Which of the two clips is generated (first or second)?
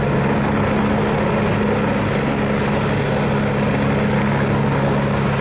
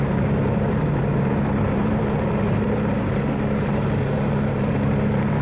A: second